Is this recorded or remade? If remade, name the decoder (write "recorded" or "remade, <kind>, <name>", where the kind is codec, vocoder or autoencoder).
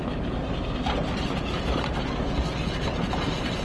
recorded